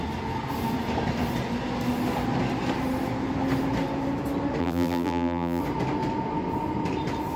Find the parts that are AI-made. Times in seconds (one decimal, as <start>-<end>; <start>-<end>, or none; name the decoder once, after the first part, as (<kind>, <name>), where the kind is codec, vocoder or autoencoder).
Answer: 4.6-5.6 (vocoder, BigVGAN v2)